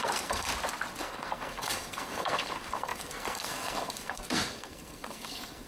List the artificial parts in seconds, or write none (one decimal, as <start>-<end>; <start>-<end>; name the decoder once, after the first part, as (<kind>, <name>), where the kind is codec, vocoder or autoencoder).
0.0-0.5 (codec, SNAC); 1.0-5.7